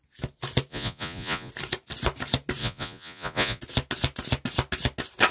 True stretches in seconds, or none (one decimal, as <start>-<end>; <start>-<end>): 0.0-0.7; 1.5-2.6; 3.6-5.3